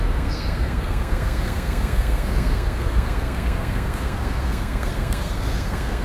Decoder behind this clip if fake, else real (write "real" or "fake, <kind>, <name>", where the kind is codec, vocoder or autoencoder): fake, codec, SNAC